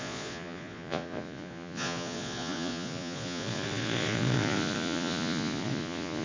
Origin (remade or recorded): remade